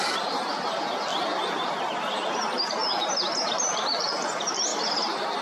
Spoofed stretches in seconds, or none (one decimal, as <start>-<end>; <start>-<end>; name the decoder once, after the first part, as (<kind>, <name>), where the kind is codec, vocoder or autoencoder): 0.0-1.1 (vocoder, BigVGAN v2); 1.9-2.8; 3.6-4.7